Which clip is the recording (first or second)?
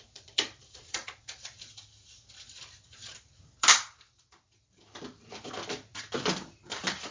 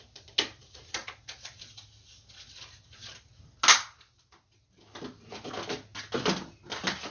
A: second